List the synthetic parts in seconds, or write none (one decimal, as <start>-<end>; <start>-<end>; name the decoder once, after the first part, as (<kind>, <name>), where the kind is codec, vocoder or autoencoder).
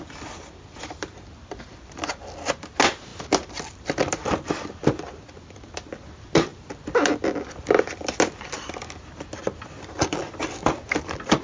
none